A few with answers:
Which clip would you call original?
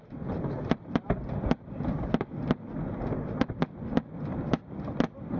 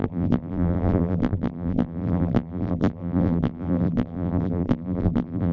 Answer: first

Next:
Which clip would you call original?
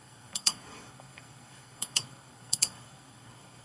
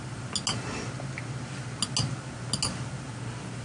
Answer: second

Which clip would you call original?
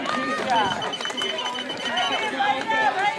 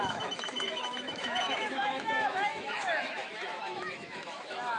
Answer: first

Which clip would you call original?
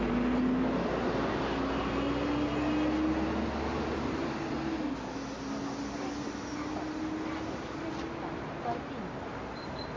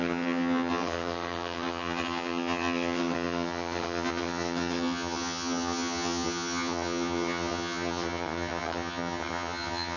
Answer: first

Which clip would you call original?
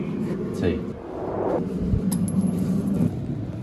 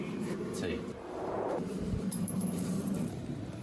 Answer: first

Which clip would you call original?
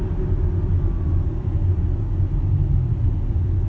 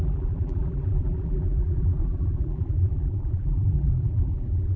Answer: first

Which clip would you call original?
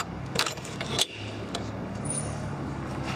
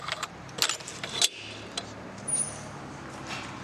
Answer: second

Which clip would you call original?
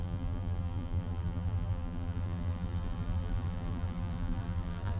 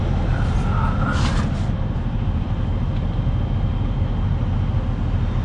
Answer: second